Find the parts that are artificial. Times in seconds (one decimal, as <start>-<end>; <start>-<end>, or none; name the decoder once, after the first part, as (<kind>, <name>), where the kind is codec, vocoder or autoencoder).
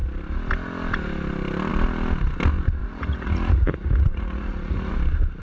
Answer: 2.8-4.9 (vocoder, Vocos)